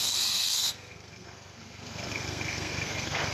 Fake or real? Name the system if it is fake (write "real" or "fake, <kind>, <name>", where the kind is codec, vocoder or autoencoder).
fake, codec, SNAC